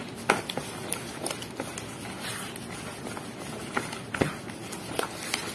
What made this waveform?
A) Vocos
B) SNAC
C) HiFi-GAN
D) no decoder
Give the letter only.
D